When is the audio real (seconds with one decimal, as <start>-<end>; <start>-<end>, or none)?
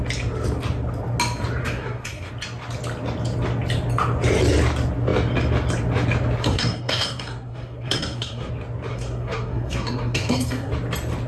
0.0-1.6; 2.3-6.4; 8.5-8.9; 10.7-11.3